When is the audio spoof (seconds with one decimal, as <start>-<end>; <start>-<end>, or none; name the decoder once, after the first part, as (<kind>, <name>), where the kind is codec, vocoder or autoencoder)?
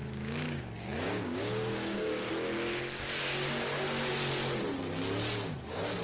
0.0-2.3 (codec, DAC)